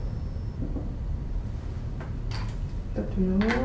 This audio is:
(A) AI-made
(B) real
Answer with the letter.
B